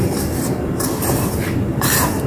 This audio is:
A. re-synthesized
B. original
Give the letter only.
B